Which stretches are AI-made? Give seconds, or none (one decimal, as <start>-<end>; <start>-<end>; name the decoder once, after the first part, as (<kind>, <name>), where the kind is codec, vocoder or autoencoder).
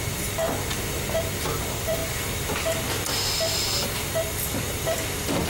0.0-0.4 (vocoder, BigVGAN v2); 1.6-2.0; 4.4-5.5